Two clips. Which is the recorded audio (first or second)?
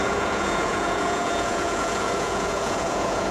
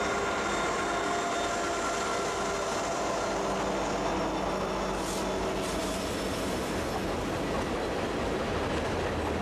second